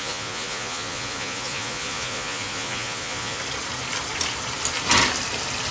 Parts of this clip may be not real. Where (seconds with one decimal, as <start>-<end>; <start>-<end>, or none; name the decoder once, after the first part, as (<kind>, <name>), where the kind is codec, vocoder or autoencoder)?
0.0-3.4 (vocoder, Vocos)